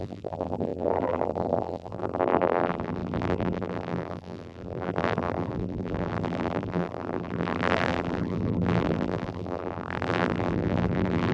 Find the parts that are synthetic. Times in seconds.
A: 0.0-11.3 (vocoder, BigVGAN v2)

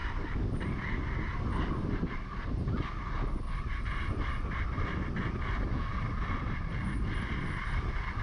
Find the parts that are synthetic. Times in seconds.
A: none

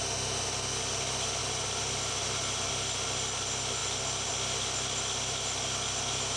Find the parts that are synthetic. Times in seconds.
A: 1.4-2.7 (vocoder, BigVGAN v2)

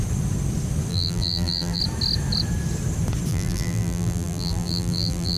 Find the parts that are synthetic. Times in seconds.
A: 0.9-1.8 (vocoder, BigVGAN v2); 3.3-5.4

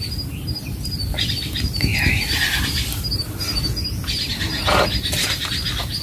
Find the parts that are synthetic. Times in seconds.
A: none